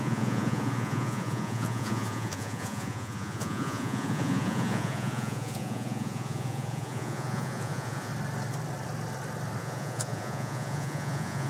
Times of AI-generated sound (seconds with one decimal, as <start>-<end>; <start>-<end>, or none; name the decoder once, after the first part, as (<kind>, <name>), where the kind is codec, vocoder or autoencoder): 0.0-8.1 (vocoder, Vocos); 9.6-11.5